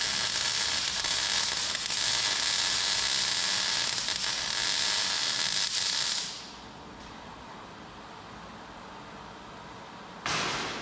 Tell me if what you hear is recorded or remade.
recorded